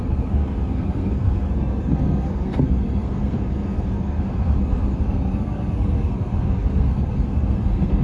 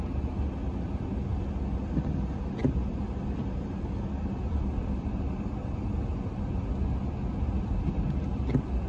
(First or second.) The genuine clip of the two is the second